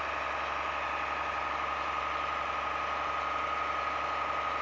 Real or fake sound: real